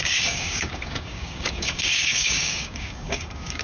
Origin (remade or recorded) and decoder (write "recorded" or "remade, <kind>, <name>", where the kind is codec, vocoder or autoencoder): remade, codec, DAC